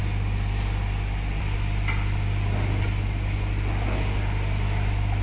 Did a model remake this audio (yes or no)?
no